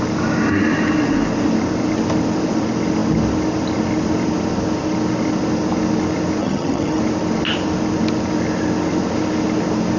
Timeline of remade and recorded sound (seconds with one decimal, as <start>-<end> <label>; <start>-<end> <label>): 0.0-6.4 recorded; 6.4-7.0 remade; 7.0-10.0 recorded